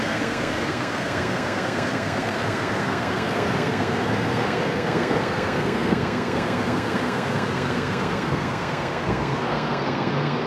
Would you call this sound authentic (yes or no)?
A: no